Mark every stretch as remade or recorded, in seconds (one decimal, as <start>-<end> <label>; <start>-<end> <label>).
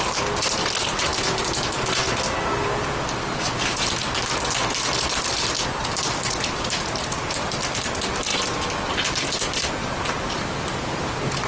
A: 0.0-11.5 recorded